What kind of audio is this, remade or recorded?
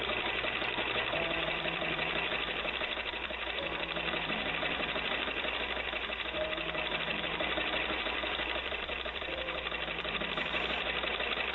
remade